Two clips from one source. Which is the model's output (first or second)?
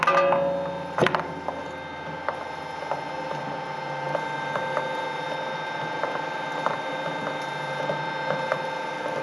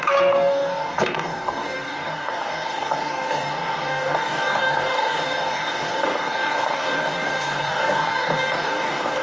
second